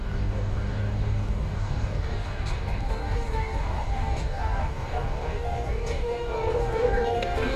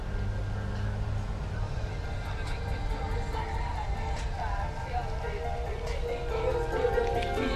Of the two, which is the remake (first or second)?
first